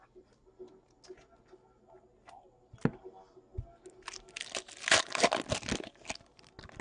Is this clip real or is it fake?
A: real